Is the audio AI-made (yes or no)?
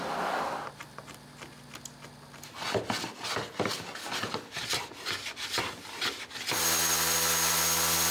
no